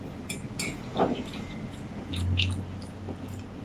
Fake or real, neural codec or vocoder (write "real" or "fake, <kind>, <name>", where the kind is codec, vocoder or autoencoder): real